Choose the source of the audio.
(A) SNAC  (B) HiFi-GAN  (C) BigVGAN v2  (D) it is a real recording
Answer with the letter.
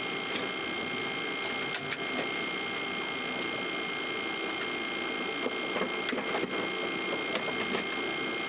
D